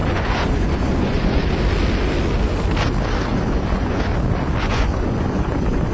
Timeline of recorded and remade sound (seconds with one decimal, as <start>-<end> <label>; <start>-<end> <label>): 0.0-1.4 remade; 1.4-3.3 recorded; 3.3-4.1 remade; 4.1-4.6 recorded; 4.6-5.9 remade